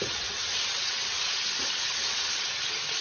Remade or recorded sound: remade